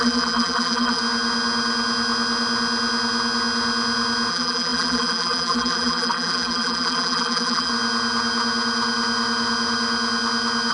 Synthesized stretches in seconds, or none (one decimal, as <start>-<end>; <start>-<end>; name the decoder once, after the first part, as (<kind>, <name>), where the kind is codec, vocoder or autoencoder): 0.0-1.0 (vocoder, BigVGAN v2); 4.3-7.7